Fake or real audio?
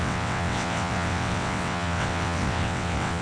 fake